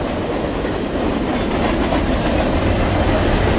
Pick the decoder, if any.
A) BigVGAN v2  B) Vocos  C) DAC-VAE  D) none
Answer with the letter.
D